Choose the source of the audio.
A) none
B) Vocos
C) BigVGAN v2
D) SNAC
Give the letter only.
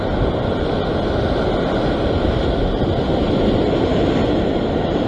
A